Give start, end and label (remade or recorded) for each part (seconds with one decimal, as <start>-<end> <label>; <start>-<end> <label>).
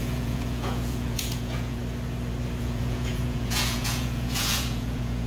0.0-1.8 remade; 1.8-2.6 recorded; 2.6-5.3 remade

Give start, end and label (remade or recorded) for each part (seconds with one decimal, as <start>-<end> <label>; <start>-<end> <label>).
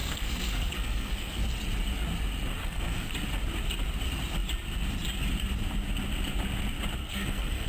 0.0-1.4 remade; 1.4-2.6 recorded; 2.6-3.1 remade; 3.1-7.0 recorded; 7.0-7.7 remade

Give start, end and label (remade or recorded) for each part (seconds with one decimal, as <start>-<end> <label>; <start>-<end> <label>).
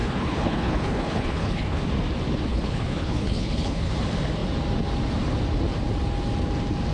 0.0-1.8 remade; 1.8-2.5 recorded; 2.5-3.9 remade; 3.9-6.9 recorded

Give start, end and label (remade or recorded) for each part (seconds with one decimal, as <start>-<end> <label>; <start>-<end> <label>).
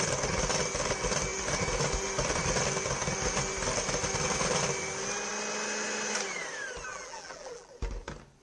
0.0-6.9 recorded; 6.9-7.7 remade; 7.7-8.4 recorded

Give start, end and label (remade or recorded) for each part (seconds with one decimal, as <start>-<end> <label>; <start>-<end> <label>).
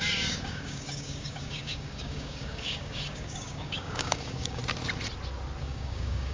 0.0-4.6 remade; 4.6-5.6 recorded; 5.6-6.3 remade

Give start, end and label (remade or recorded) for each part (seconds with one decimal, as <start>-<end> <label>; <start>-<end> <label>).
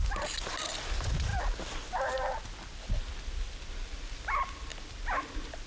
0.0-5.7 recorded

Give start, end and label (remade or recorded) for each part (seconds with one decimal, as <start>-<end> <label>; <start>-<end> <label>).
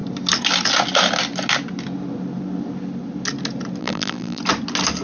0.0-3.8 recorded; 3.8-4.4 remade; 4.4-5.0 recorded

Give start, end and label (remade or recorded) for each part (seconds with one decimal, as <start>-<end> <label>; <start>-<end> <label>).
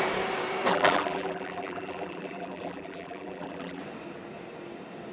0.0-0.7 recorded; 0.7-3.8 remade; 3.8-5.1 recorded